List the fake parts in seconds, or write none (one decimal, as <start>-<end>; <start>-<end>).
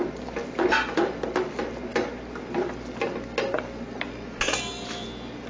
none